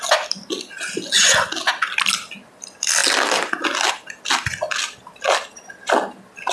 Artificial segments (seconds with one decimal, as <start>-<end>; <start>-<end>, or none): none